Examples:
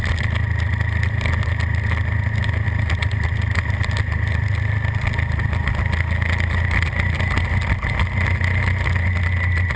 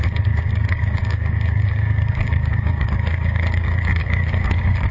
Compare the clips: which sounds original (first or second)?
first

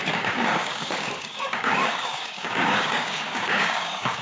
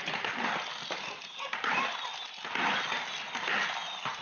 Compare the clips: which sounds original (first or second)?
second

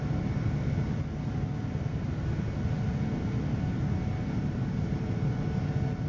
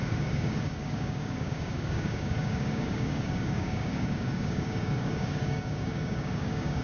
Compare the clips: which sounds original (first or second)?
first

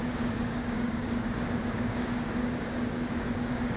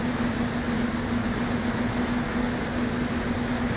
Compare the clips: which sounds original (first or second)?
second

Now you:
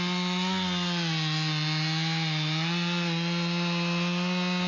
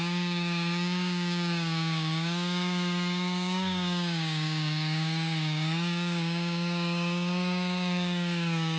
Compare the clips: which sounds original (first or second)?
first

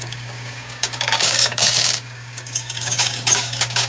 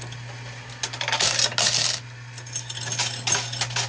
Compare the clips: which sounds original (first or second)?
second